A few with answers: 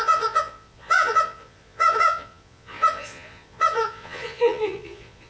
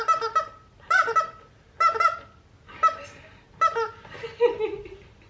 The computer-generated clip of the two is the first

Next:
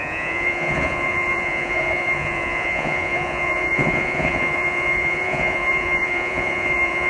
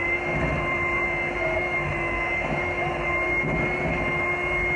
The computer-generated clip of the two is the first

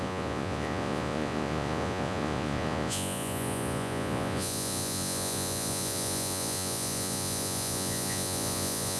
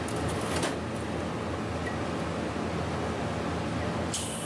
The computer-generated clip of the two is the first